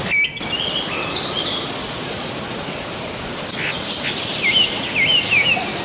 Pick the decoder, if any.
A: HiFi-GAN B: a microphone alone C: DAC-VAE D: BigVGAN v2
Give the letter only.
B